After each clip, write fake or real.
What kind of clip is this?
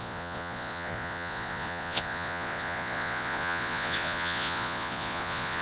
fake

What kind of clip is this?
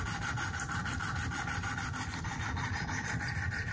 fake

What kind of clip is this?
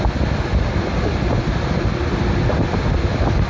real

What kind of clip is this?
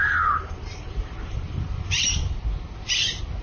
real